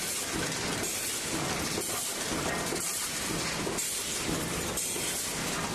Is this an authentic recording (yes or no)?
yes